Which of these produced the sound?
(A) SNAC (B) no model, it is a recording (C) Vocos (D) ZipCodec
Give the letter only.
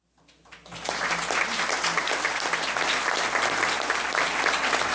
B